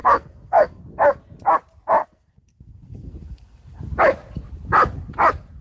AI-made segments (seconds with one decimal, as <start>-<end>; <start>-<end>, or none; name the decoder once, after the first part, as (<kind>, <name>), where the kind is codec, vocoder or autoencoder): 0.0-0.8 (codec, SNAC); 2.0-3.8